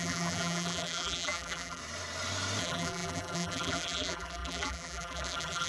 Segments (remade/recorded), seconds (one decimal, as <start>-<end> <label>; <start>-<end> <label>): 0.0-1.8 remade; 1.8-2.6 recorded; 2.6-5.7 remade

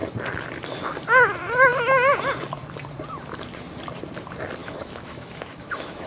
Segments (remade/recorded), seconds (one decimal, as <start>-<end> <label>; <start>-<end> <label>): 0.0-4.6 recorded; 4.6-6.1 remade

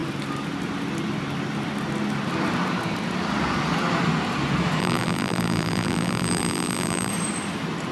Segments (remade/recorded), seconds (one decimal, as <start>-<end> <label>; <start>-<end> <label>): 0.0-4.8 recorded; 4.8-7.1 remade; 7.1-7.9 recorded

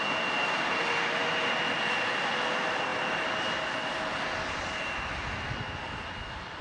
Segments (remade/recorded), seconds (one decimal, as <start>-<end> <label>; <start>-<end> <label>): 0.0-6.6 recorded

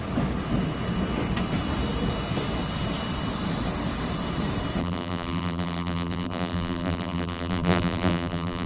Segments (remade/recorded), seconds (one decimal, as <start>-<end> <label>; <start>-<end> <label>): 0.0-4.8 recorded; 4.8-8.7 remade

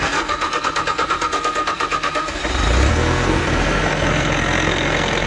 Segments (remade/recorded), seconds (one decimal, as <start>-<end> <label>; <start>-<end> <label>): 0.0-2.4 remade; 2.4-2.9 recorded; 2.9-5.3 remade

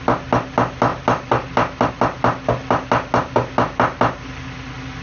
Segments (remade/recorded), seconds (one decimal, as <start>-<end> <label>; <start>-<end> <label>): 0.0-5.0 recorded

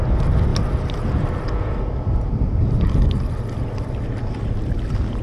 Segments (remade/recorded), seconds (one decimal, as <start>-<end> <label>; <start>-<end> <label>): 0.0-5.2 recorded